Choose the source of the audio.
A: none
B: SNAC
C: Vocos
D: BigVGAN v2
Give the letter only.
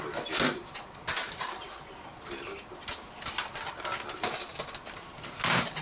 A